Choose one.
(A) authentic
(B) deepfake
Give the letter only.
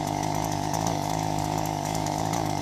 B